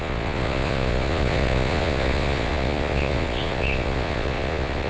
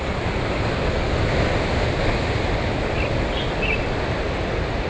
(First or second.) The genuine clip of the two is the second